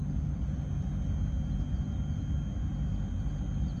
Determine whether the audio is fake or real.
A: real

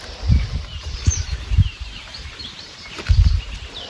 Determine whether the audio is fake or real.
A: fake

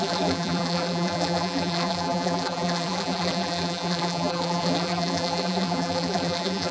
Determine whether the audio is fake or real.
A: fake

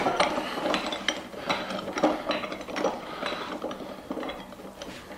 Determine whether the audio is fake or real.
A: real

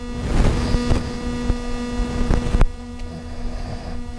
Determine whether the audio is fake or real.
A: real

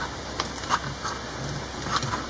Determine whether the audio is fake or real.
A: real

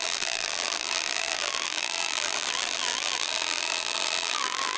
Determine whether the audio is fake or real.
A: fake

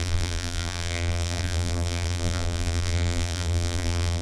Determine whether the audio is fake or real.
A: fake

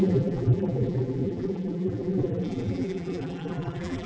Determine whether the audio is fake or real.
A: fake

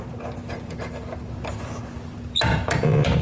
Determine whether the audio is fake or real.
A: fake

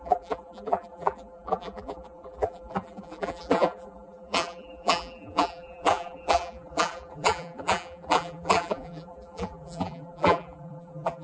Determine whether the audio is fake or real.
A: fake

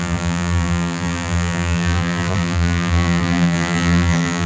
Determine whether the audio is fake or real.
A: fake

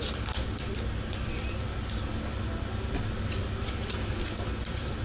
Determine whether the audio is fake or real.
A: real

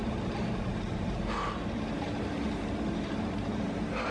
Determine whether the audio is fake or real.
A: fake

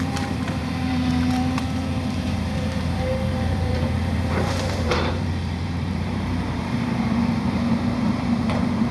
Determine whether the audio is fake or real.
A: fake